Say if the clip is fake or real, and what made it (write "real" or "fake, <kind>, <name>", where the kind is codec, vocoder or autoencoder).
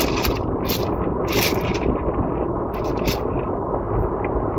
real